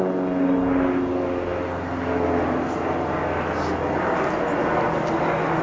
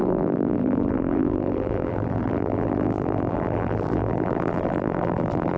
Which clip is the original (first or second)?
first